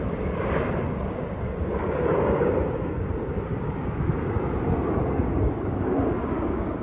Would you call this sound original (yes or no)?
no